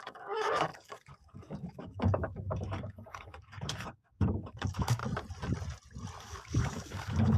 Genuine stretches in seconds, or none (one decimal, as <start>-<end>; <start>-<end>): 5.0-6.2